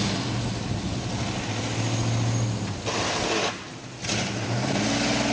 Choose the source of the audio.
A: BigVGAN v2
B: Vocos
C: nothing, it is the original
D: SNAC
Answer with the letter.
C